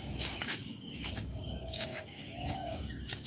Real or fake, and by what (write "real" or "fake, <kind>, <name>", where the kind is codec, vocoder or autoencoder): fake, codec, DAC